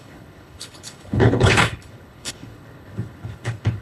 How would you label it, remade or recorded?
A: remade